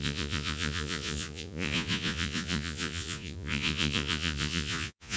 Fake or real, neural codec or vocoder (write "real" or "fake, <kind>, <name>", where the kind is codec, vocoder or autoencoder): fake, vocoder, Vocos